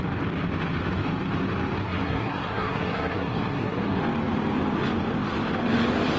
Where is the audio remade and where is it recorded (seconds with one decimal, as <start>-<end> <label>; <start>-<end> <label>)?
0.0-1.8 recorded; 1.8-4.0 remade; 4.0-6.2 recorded